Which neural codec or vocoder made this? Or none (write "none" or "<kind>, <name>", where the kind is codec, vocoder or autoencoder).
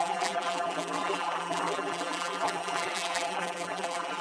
vocoder, BigVGAN v2